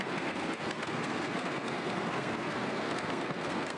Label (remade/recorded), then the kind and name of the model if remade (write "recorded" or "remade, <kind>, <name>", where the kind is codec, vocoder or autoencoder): remade, codec, SNAC